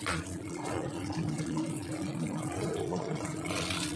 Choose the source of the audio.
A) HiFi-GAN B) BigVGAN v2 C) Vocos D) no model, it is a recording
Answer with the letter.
C